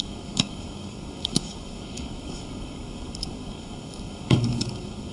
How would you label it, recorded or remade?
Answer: remade